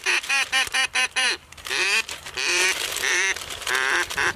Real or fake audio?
fake